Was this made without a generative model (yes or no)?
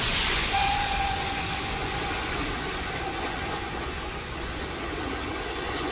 no